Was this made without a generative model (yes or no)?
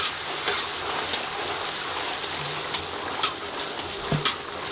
yes